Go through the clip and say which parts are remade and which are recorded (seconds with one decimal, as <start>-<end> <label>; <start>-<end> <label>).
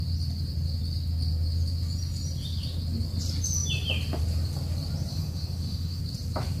0.0-5.1 recorded; 5.1-6.0 remade; 6.0-6.6 recorded